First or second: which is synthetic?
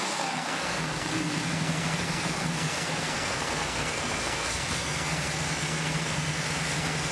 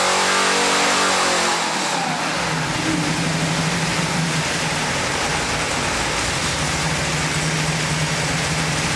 first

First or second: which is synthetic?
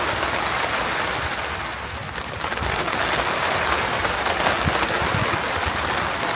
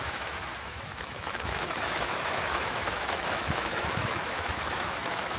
second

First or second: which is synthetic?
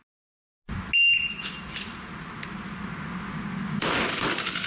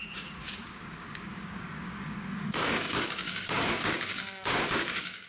second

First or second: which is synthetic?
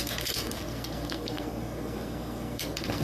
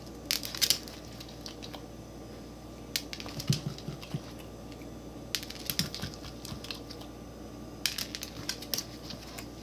first